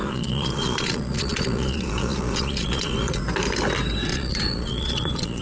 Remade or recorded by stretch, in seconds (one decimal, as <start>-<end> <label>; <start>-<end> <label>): 0.0-3.2 remade; 3.2-4.1 recorded; 4.1-5.4 remade